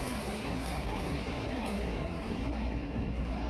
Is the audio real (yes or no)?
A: no